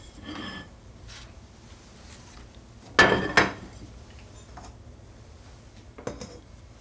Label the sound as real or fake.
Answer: real